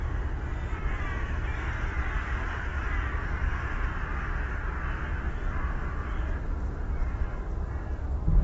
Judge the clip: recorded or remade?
recorded